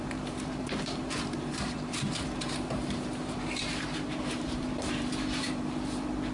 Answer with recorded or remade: remade